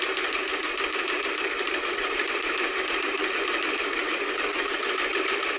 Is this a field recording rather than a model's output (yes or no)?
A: no